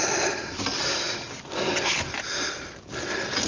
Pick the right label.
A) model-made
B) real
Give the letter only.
B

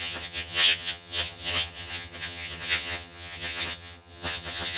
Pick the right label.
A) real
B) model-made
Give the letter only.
B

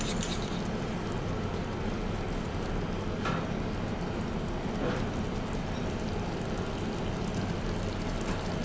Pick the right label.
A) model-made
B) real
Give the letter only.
B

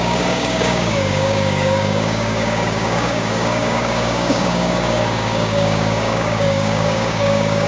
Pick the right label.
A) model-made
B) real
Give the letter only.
A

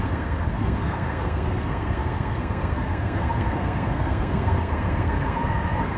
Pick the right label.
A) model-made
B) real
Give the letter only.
A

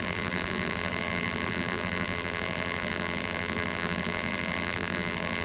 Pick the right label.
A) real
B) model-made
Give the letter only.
B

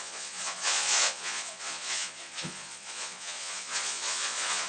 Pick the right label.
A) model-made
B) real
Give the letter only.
A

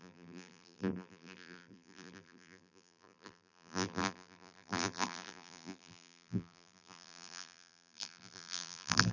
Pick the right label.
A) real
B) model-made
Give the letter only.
B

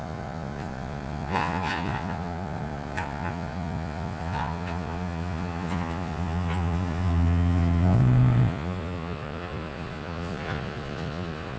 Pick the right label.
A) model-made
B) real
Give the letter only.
A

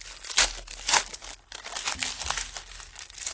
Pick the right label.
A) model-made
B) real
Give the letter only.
B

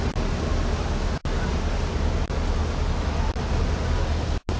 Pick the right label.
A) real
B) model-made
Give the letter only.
A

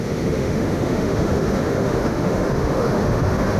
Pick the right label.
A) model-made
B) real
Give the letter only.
A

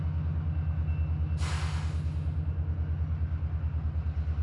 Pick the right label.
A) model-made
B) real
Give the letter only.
B